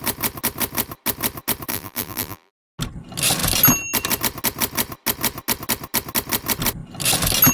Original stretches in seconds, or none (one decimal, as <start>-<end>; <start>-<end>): 0.0-1.7; 2.5-7.5